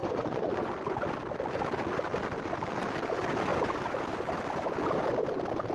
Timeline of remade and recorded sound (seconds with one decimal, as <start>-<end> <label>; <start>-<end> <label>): 0.0-0.7 remade; 0.7-5.7 recorded